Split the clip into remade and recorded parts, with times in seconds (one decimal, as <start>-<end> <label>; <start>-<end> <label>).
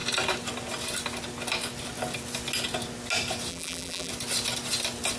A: 0.0-3.5 recorded; 3.5-4.1 remade; 4.1-5.2 recorded